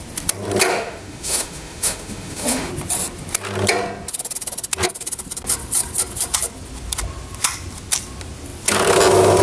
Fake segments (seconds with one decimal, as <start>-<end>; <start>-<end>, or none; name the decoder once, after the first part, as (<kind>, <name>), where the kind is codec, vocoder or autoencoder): 0.7-2.7 (autoencoder, DAC-VAE)